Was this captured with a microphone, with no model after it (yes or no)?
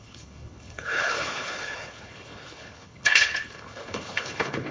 no